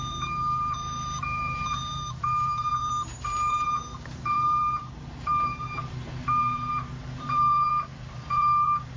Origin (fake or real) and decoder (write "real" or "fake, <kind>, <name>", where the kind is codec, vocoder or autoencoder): fake, vocoder, BigVGAN v2